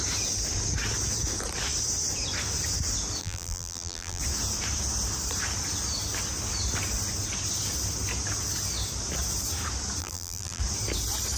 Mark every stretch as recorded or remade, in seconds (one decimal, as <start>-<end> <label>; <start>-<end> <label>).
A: 0.0-3.2 recorded; 3.2-4.2 remade; 4.2-10.0 recorded; 10.0-10.6 remade; 10.6-11.4 recorded